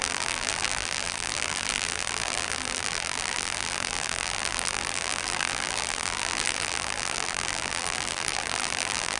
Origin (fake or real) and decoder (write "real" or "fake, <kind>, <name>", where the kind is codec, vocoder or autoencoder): fake, vocoder, BigVGAN v2